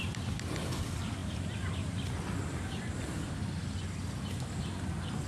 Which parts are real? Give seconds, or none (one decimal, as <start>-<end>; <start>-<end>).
0.0-5.3